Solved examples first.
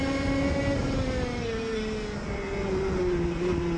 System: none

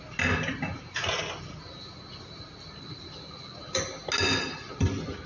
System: none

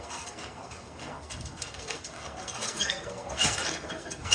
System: codec, SNAC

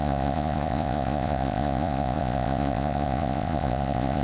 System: vocoder, Vocos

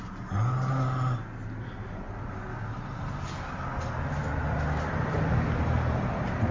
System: none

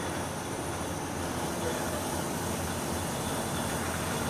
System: none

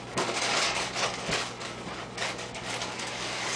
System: codec, DAC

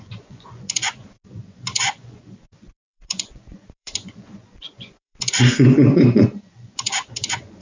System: vocoder, Vocos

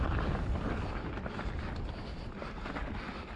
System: none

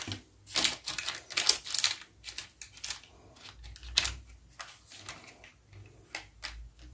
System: none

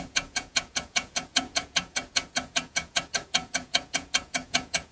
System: vocoder, Vocos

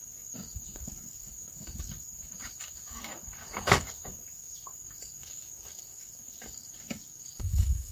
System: codec, DAC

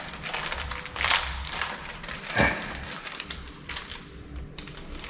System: vocoder, BigVGAN v2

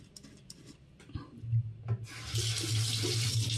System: none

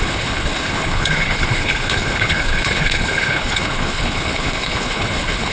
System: codec, HILCodec